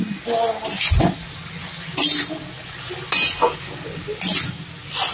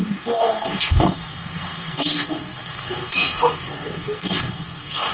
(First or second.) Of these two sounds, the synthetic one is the second